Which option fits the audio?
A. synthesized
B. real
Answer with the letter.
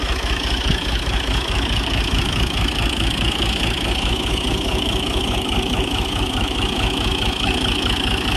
A